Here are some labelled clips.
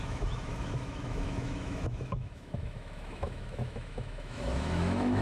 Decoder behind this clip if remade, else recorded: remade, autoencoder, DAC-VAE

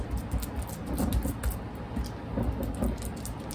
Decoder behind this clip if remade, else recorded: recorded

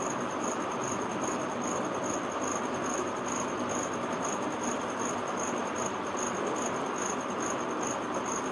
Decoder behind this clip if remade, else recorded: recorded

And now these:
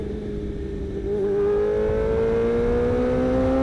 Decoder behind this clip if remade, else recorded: recorded